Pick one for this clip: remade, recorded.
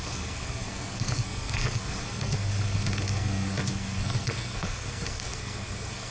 remade